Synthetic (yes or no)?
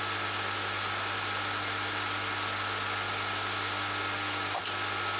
no